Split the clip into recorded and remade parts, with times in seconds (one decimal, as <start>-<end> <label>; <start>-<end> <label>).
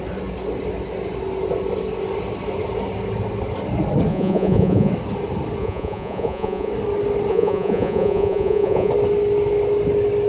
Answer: 0.0-4.1 recorded; 4.1-4.9 remade; 4.9-5.6 recorded; 5.6-6.7 remade; 6.7-7.3 recorded; 7.3-8.9 remade; 8.9-10.3 recorded